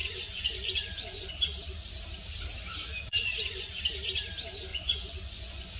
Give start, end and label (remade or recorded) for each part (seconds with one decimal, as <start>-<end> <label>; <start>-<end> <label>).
0.0-1.3 remade; 1.3-3.1 recorded; 3.1-3.7 remade; 3.7-4.7 recorded; 4.7-5.8 remade